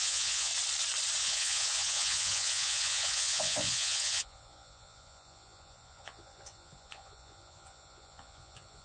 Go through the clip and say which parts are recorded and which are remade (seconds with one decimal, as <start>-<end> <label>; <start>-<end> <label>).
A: 0.0-0.5 remade; 0.5-1.2 recorded; 1.2-8.8 remade